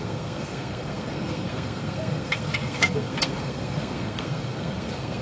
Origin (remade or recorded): remade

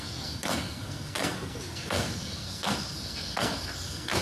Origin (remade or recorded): remade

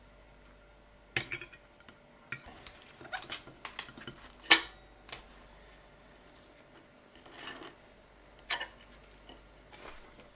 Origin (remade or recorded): recorded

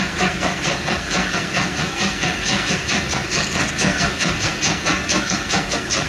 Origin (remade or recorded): remade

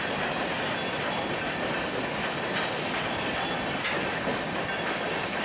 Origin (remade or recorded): recorded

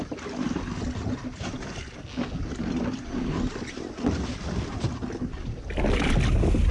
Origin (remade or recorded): recorded